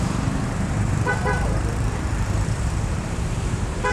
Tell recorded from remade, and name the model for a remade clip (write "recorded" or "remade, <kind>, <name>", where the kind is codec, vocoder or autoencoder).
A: remade, vocoder, BigVGAN v2